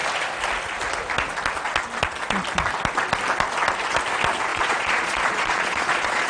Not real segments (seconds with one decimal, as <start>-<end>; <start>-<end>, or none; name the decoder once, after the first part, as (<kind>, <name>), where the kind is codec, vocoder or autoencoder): 4.5-6.3 (vocoder, Vocos)